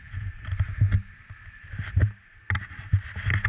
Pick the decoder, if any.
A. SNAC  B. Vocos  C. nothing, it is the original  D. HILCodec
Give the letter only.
C